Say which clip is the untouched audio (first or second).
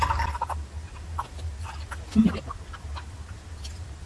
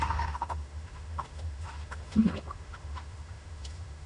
first